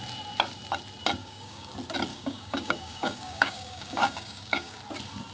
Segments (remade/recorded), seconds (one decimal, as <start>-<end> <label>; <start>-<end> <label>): 0.0-1.2 recorded; 1.2-1.7 remade; 1.7-2.1 recorded; 2.1-4.8 remade; 4.8-5.3 recorded